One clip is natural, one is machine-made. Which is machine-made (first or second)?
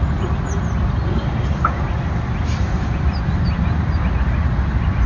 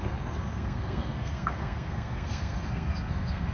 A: second